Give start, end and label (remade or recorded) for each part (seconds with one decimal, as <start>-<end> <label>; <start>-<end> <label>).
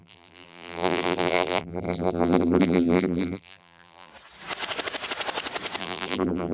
0.0-4.1 remade; 4.1-5.8 recorded; 5.8-6.5 remade